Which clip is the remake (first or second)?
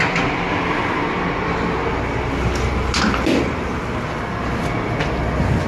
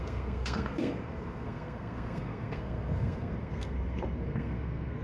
second